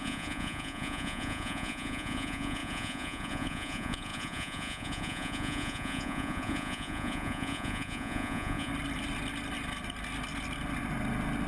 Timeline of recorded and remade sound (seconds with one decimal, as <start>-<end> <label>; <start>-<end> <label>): 0.0-8.7 remade; 8.7-11.5 recorded